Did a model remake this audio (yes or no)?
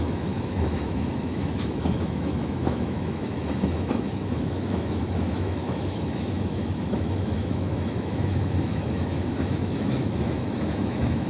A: yes